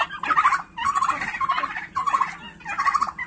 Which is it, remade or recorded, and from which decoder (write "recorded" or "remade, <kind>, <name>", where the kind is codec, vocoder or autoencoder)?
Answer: recorded